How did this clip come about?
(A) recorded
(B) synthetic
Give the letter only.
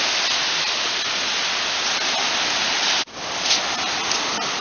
A